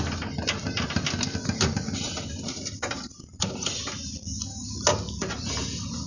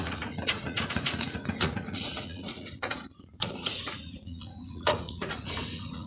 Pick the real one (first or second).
first